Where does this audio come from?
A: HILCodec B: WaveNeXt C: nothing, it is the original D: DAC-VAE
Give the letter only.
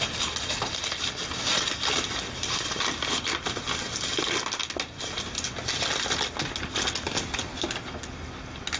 C